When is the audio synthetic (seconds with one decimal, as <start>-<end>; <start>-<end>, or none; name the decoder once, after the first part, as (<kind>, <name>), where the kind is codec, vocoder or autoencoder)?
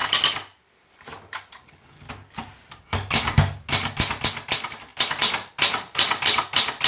0.0-2.8 (vocoder, BigVGAN v2)